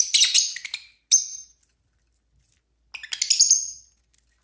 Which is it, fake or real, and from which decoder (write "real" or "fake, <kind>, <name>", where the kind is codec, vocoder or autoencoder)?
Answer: real